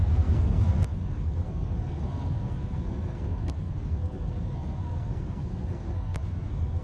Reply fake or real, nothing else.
fake